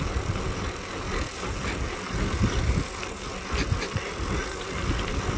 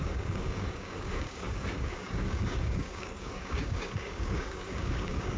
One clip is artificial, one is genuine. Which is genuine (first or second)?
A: first